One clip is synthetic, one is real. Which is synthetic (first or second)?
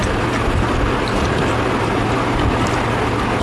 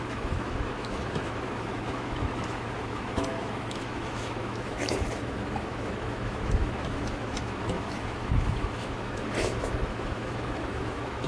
second